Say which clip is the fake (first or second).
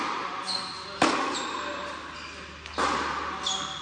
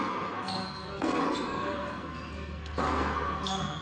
second